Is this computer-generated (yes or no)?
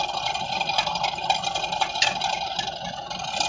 no